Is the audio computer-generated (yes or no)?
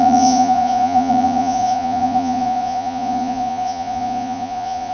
yes